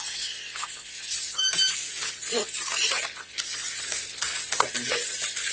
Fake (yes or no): no